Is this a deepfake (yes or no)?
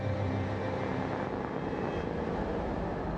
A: no